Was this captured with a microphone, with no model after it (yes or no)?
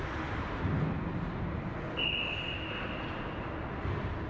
yes